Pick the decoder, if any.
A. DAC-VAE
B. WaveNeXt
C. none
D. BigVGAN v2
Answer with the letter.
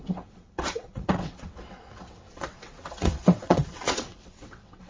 B